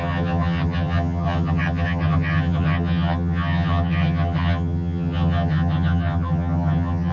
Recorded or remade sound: remade